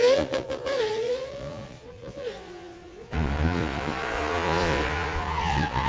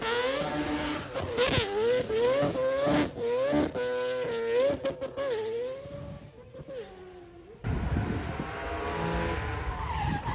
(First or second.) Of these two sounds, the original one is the second